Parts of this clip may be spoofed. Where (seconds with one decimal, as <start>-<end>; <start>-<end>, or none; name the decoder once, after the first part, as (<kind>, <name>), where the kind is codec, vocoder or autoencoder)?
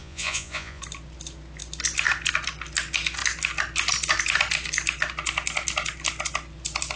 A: 0.0-0.8 (vocoder, Vocos)